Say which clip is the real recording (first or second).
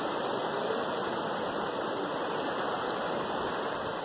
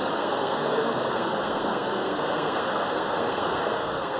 first